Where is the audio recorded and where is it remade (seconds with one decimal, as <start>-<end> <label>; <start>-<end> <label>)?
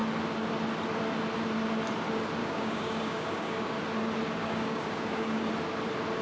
0.0-2.4 recorded; 2.4-3.8 remade; 3.8-4.4 recorded; 4.4-5.5 remade; 5.5-6.2 recorded